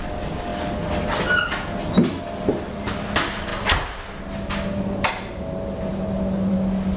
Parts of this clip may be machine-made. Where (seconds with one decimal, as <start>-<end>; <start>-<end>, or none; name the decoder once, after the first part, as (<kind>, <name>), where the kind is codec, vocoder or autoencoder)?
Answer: none